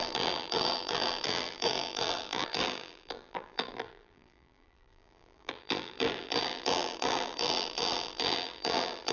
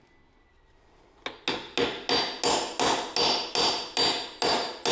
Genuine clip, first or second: second